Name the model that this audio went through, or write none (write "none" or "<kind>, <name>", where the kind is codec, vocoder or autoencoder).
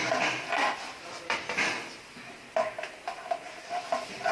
none